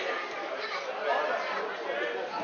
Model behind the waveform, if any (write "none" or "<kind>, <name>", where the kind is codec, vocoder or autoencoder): none